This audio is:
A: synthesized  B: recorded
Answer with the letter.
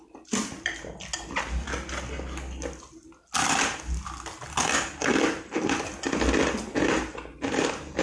B